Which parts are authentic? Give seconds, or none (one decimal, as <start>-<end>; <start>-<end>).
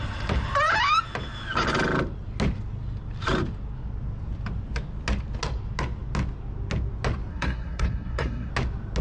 0.0-7.3; 8.5-9.0